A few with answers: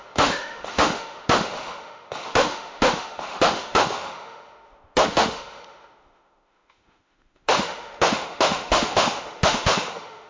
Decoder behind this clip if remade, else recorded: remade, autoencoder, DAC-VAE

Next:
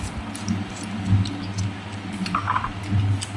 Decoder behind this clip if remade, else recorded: recorded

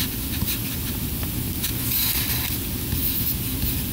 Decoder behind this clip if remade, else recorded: recorded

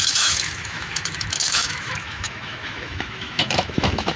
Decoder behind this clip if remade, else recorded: remade, autoencoder, DAC-VAE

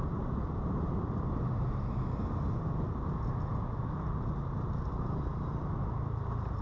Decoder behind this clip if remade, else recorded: recorded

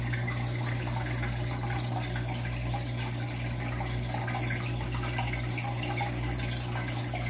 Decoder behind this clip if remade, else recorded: recorded